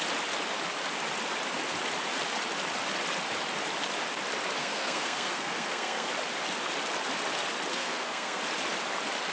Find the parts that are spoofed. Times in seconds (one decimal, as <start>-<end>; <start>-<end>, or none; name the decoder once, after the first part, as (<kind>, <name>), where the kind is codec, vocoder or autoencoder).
4.6-6.1 (codec, SNAC); 7.7-8.4